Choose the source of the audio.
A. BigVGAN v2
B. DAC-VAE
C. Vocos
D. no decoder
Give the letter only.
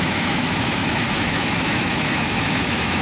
B